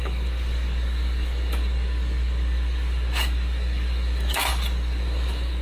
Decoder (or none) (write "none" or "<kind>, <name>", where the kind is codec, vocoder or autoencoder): codec, DAC